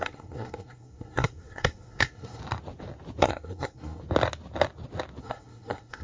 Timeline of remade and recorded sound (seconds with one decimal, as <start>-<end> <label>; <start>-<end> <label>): 0.0-2.4 remade; 2.4-3.2 recorded; 3.2-4.0 remade; 4.0-5.2 recorded; 5.2-6.0 remade

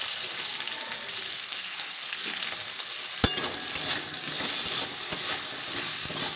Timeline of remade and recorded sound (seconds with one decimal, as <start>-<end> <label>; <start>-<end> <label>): 0.0-1.3 recorded; 1.3-2.4 remade; 2.4-6.4 recorded

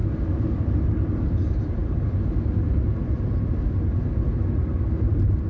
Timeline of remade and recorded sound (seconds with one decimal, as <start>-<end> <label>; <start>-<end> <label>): 0.0-5.5 recorded

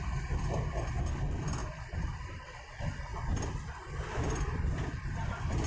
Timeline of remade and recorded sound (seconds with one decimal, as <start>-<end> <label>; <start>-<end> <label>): 0.0-1.6 recorded; 1.6-2.7 remade; 2.7-3.1 recorded; 3.1-5.0 remade; 5.0-5.7 recorded

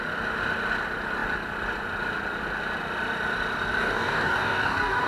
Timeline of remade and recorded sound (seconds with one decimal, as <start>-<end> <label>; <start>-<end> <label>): 0.0-3.8 recorded; 3.8-5.1 remade

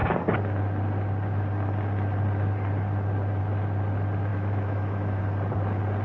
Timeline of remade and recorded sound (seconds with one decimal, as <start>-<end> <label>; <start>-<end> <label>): 0.0-4.3 recorded; 4.3-5.2 remade; 5.2-6.0 recorded